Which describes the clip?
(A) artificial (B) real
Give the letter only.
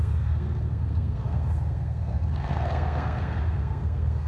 A